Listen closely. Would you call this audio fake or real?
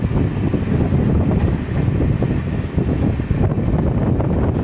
real